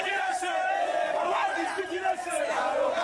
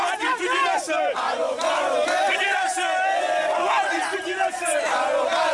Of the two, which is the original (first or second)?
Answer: second